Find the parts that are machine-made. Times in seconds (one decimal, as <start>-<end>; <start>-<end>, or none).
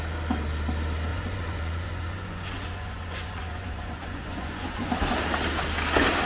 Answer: 1.1-4.9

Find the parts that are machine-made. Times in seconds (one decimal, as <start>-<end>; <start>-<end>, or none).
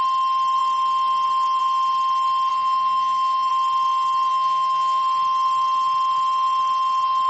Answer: 2.5-3.5; 4.3-5.0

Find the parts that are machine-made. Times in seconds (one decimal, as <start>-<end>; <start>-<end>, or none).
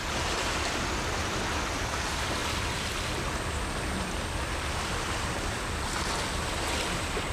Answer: none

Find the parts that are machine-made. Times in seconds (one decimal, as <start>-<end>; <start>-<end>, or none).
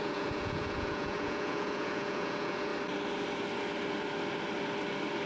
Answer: 0.0-2.7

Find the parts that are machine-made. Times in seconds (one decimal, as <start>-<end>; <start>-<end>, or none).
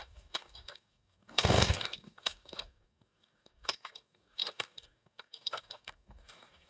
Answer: 0.0-6.7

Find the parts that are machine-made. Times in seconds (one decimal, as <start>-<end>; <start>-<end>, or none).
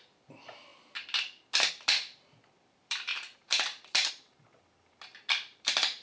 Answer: 0.0-0.7; 1.7-6.0